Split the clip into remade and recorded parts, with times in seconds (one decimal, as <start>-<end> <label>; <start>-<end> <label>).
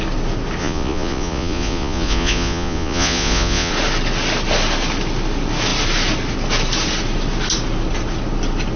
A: 0.0-0.6 recorded; 0.6-3.7 remade; 3.7-8.8 recorded